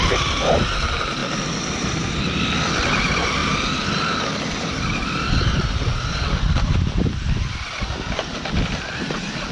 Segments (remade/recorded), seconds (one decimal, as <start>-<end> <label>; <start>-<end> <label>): 0.0-9.5 recorded